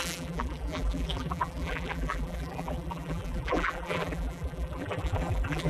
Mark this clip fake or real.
fake